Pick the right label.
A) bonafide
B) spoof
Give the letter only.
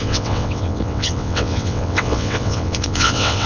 B